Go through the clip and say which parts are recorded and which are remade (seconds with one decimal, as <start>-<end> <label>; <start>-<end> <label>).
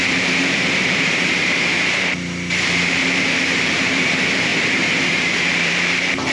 0.0-4.5 remade; 4.5-5.1 recorded; 5.1-6.3 remade